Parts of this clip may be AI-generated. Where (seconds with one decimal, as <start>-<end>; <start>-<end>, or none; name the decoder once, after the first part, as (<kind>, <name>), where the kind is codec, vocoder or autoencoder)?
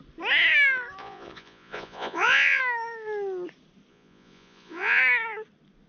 1.0-2.6 (vocoder, Vocos); 3.9-5.0